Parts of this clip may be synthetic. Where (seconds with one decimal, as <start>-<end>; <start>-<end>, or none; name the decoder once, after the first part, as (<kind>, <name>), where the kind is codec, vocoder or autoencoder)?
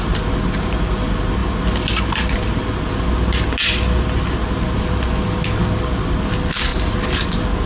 none